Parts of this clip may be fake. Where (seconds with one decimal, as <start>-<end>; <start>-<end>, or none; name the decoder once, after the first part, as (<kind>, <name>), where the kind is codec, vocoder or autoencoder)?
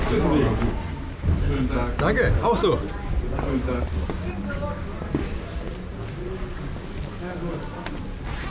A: none